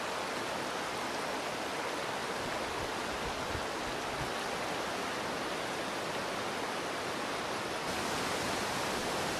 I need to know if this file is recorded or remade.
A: recorded